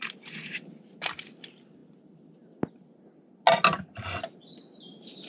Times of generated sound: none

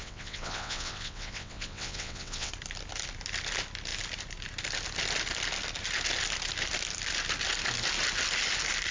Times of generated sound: 0.0-2.5 (vocoder, WaveNeXt)

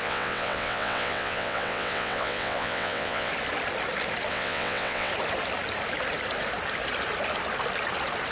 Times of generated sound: 0.0-3.3 (vocoder, WaveNeXt); 4.3-5.1

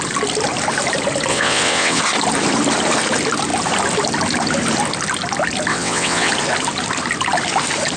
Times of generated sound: 1.3-2.0 (vocoder, WaveNeXt); 5.7-6.3